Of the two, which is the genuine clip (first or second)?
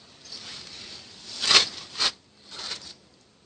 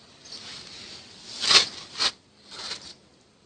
second